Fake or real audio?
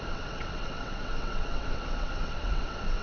fake